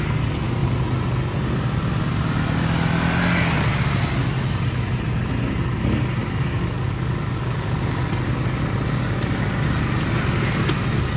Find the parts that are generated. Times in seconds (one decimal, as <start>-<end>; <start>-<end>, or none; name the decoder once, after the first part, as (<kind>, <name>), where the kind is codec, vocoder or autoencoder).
6.2-8.0 (codec, DAC)